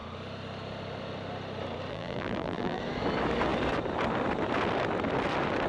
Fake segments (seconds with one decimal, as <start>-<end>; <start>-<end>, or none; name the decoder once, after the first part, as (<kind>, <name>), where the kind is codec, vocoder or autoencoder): 1.9-2.8 (vocoder, BigVGAN v2)